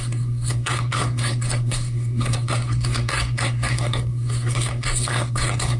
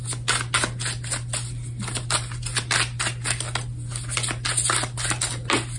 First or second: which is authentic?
second